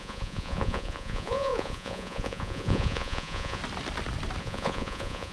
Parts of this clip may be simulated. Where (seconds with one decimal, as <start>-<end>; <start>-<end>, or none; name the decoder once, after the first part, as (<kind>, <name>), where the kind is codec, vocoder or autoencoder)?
0.0-3.6 (vocoder, Vocos); 4.4-5.3